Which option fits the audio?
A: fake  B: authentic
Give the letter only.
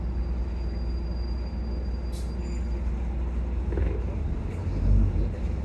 B